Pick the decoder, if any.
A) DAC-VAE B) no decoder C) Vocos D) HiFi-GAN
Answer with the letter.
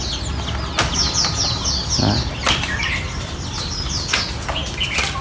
B